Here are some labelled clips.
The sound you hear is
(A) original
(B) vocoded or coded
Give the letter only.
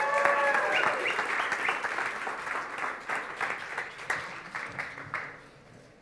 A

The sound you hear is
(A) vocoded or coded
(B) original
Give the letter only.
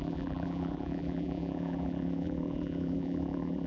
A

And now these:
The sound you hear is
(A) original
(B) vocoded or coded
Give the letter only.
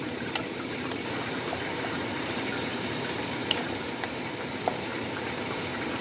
B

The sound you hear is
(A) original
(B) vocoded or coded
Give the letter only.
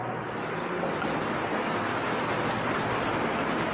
A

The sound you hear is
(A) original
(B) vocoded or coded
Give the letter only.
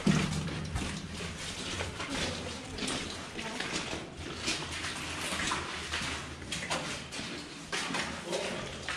B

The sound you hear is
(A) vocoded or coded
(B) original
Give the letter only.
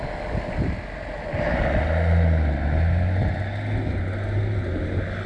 B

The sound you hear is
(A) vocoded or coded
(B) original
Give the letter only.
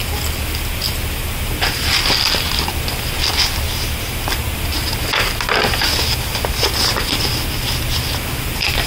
B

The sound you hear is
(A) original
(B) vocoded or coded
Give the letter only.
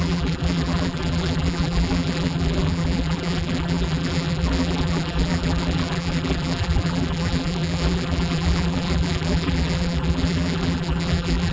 B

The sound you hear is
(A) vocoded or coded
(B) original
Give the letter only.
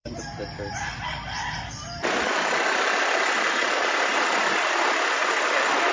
A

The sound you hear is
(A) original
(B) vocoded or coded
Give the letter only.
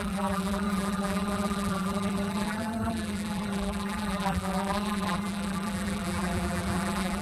B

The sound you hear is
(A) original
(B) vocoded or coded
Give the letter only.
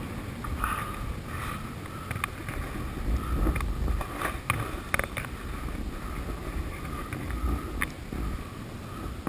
A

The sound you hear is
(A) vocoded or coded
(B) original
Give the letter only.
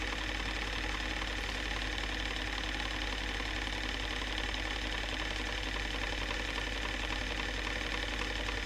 B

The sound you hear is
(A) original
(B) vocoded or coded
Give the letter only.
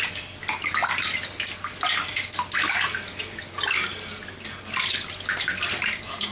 A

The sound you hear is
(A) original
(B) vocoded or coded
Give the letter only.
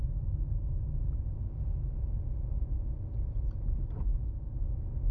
A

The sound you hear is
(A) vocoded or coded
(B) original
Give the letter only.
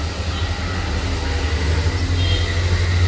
B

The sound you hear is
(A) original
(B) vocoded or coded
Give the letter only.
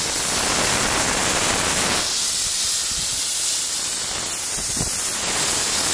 A